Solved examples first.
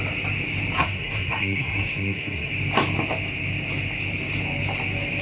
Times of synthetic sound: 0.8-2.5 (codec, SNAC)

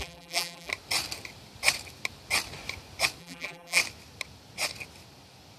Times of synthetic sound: 0.0-0.7 (vocoder, BigVGAN v2); 3.2-3.8

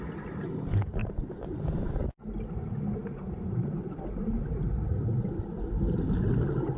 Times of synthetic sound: 1.0-1.9 (vocoder, BigVGAN v2); 3.0-5.3

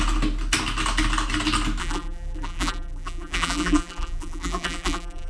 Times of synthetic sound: 1.8-5.3 (vocoder, BigVGAN v2)

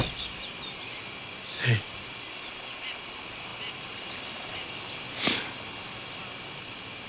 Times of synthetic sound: none